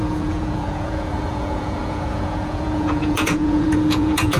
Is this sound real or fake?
fake